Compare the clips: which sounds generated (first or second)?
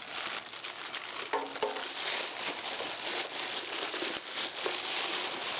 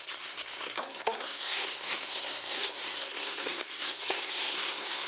second